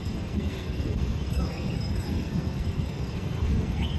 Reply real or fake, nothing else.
fake